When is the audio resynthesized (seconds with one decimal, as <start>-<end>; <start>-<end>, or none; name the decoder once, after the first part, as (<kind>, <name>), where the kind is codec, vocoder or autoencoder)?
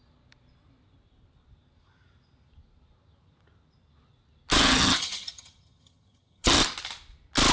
4.6-6.6 (vocoder, HiFi-GAN)